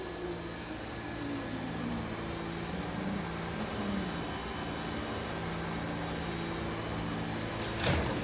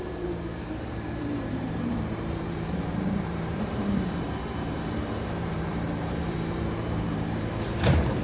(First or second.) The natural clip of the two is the first